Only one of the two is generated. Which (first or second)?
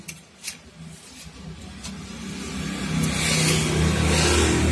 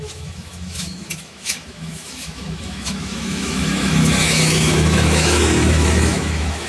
second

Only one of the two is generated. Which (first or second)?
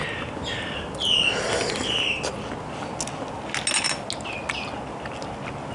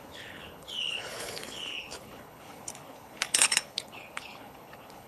second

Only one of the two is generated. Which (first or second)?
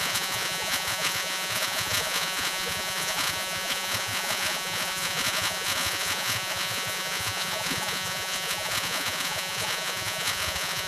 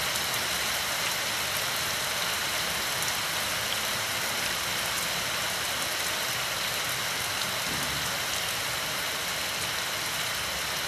first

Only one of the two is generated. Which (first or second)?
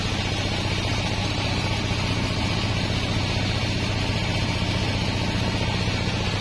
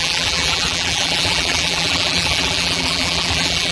second